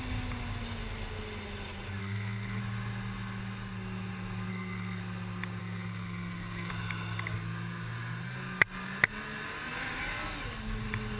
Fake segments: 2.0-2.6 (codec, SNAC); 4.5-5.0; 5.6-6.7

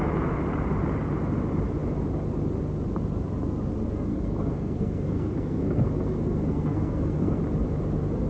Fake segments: 4.1-7.4 (codec, SNAC)

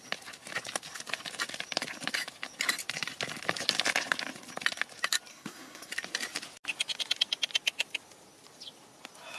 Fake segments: 5.3-5.9 (codec, SNAC)

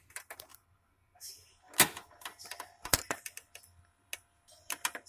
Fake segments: none

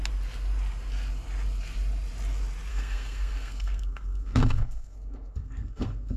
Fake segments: 2.7-6.2 (codec, SNAC)

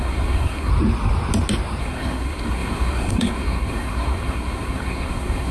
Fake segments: 0.0-0.7 (codec, SNAC); 1.8-5.5